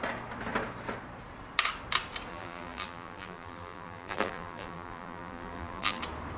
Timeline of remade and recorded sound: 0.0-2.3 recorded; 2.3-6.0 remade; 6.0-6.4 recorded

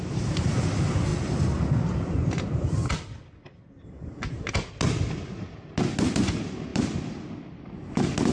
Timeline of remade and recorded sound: 0.0-1.1 recorded; 1.1-4.5 remade; 4.5-6.7 recorded; 6.7-7.3 remade; 7.3-8.3 recorded